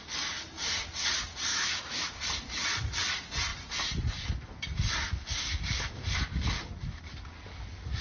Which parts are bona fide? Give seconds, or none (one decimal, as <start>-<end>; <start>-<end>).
0.0-1.5; 2.2-8.0